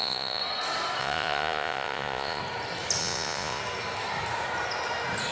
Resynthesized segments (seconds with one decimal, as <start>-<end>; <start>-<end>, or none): 0.0-0.4; 1.0-2.4; 3.0-3.6